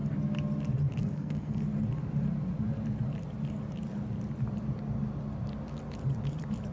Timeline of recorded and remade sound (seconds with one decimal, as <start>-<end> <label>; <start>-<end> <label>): 0.0-1.0 recorded; 1.0-1.6 remade; 1.6-6.7 recorded